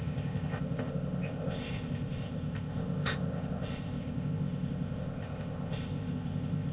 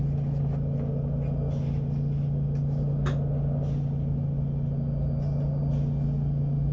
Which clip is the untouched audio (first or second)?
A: second